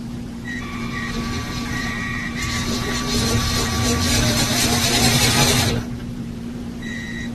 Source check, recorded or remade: remade